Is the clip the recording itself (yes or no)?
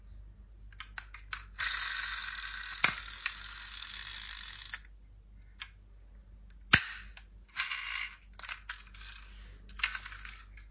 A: yes